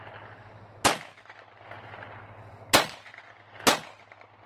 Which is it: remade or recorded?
recorded